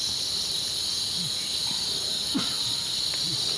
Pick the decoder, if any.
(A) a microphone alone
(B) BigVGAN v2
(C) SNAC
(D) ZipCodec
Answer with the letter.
A